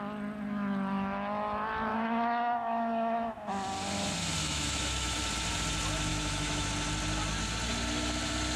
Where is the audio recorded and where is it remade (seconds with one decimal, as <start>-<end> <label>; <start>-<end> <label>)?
0.0-1.9 recorded; 1.9-3.5 remade; 3.5-4.4 recorded; 4.4-5.2 remade; 5.2-6.1 recorded; 6.1-6.7 remade; 6.7-8.6 recorded